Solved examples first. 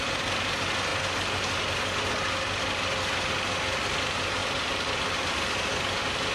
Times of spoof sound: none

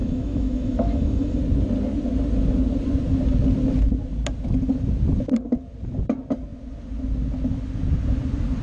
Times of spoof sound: 0.0-1.4

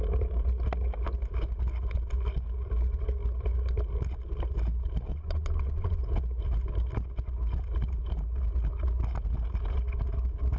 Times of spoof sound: 5.1-6.0

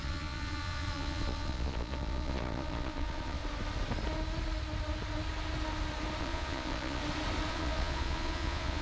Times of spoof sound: 0.0-3.4; 6.2-7.0; 7.5-8.8

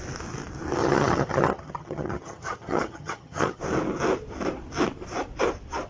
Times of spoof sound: 0.8-3.6

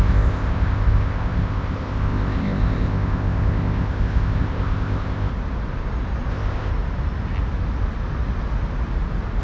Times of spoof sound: 0.0-5.3; 6.3-6.7

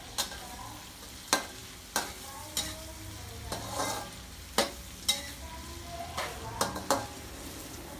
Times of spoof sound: none